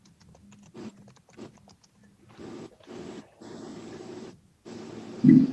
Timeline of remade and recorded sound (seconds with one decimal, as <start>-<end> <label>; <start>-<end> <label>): 0.0-3.7 recorded; 3.7-4.5 remade; 4.5-5.5 recorded